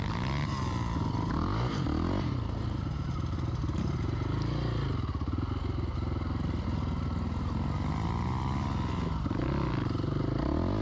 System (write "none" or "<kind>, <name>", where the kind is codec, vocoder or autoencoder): none